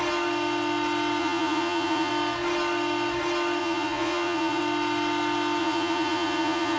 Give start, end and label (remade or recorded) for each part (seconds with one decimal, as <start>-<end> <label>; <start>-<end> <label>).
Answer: 0.0-1.2 recorded; 1.2-2.1 remade; 2.1-3.6 recorded; 3.6-4.6 remade; 4.6-5.6 recorded; 5.6-6.8 remade